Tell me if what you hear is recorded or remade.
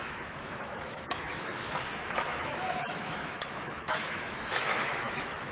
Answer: remade